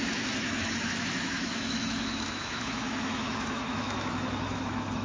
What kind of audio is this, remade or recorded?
remade